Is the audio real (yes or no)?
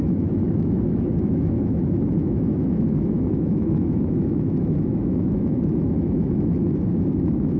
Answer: no